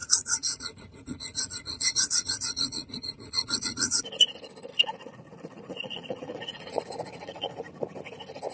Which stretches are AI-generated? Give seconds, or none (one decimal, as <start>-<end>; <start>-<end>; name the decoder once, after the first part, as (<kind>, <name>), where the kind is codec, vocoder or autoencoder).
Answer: 0.0-4.0 (vocoder, Vocos); 4.7-7.7